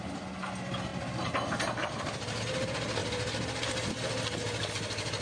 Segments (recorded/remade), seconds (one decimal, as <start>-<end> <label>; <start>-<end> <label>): 0.0-5.2 recorded